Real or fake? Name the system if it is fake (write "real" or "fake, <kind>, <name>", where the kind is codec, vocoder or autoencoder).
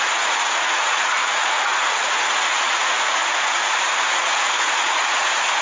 fake, vocoder, Vocos